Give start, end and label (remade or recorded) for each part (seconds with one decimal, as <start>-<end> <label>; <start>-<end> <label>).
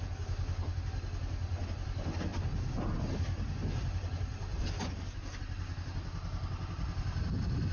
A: 0.0-7.7 recorded